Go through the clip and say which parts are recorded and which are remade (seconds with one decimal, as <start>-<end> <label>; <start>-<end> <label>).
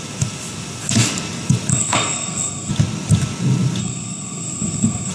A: 0.0-1.7 recorded; 1.7-2.7 remade; 2.7-3.8 recorded; 3.8-5.1 remade